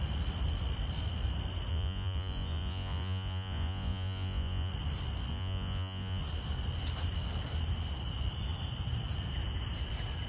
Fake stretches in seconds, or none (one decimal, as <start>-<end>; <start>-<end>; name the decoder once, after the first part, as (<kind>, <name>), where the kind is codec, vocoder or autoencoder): 1.7-4.7 (vocoder, Vocos); 5.3-6.2

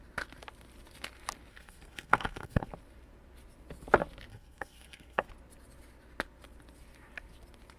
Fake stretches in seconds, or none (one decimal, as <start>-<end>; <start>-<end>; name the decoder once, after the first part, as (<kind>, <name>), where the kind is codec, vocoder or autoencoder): 1.5-2.7 (codec, SNAC); 4.3-5.3